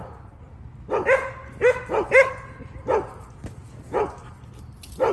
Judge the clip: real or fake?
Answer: real